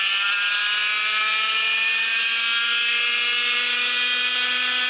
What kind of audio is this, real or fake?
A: real